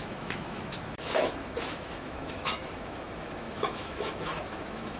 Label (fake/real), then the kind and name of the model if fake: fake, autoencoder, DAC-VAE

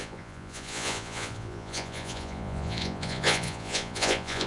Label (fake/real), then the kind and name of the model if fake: fake, vocoder, Vocos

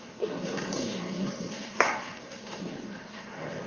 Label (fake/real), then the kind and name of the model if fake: fake, codec, SNAC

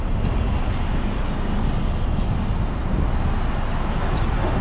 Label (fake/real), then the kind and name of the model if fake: real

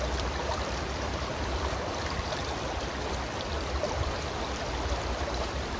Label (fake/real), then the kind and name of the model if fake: fake, vocoder, BigVGAN v2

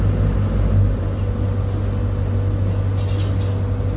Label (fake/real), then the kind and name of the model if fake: real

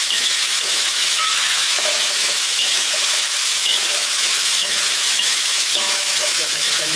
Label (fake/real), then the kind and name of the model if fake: fake, autoencoder, DAC-VAE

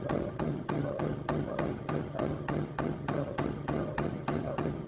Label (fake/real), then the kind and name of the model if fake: fake, vocoder, HiFi-GAN